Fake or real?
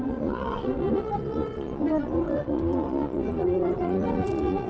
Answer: fake